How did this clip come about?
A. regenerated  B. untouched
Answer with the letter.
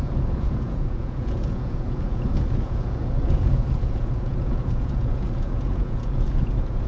A